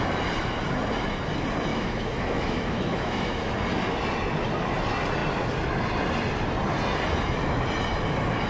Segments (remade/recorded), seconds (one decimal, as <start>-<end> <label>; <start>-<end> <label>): 0.0-1.7 recorded; 1.7-3.5 remade; 3.5-8.5 recorded